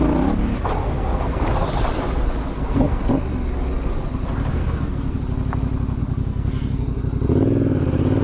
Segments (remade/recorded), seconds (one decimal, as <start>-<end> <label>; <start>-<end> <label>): 0.0-0.8 recorded; 0.8-1.4 remade; 1.4-2.5 recorded; 2.5-3.0 remade; 3.0-4.5 recorded; 4.5-5.2 remade; 5.2-6.0 recorded; 6.0-7.0 remade; 7.0-8.2 recorded